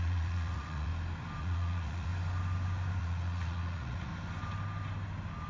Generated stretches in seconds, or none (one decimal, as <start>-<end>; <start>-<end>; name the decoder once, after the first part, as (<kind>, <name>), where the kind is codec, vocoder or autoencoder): 0.0-0.9 (vocoder, Vocos); 1.4-2.1; 3.0-4.1